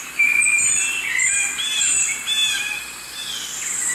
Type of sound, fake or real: real